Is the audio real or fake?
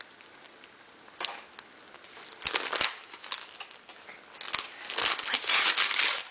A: real